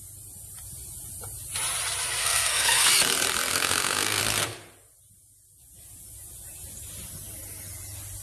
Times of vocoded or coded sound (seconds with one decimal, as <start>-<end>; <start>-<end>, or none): 2.2-2.9; 3.5-4.2